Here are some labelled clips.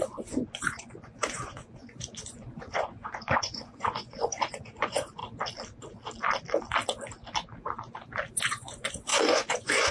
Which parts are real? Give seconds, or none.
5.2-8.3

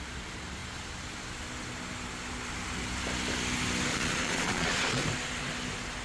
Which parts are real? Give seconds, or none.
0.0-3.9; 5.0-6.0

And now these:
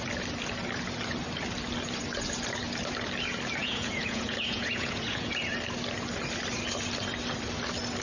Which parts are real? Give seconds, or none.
0.0-3.6; 5.3-8.0